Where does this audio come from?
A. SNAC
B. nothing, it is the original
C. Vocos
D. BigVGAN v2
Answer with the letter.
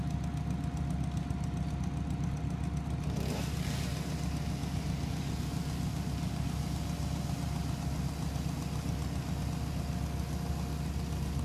B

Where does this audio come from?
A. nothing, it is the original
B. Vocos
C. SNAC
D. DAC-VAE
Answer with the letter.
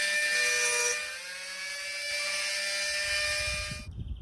A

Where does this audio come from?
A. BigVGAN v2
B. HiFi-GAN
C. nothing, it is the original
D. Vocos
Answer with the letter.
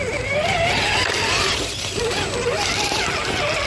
C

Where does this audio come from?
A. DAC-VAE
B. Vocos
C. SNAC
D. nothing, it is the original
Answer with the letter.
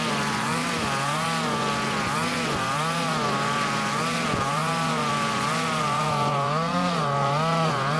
B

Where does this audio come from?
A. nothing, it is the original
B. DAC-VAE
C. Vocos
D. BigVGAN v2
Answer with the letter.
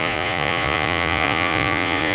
C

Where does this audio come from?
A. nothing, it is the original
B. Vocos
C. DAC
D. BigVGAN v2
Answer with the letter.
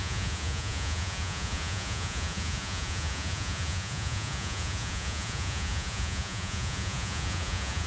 B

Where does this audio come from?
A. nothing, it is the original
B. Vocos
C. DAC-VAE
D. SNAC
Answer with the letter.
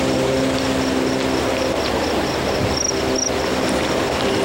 A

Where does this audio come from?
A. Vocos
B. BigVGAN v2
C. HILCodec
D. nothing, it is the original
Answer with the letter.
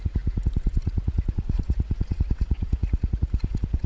A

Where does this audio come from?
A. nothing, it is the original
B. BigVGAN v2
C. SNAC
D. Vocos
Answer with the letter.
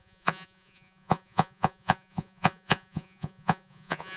D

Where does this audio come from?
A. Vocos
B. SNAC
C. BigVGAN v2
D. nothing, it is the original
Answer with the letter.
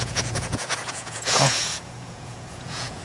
A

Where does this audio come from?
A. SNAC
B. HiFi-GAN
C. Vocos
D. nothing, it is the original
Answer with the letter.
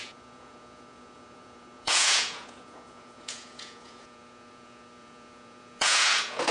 C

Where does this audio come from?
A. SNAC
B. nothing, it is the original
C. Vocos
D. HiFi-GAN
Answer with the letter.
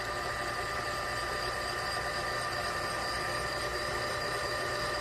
B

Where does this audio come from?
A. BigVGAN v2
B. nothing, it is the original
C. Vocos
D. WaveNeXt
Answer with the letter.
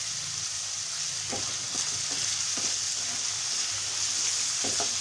B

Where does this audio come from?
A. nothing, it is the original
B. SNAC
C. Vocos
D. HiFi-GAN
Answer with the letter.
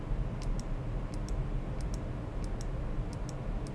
A